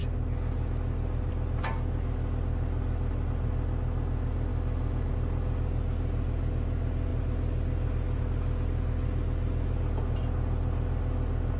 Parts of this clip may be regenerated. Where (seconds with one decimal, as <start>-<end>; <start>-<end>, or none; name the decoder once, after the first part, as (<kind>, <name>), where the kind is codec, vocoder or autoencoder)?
4.5-5.1 (autoencoder, DAC-VAE)